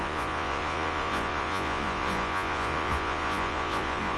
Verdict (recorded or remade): remade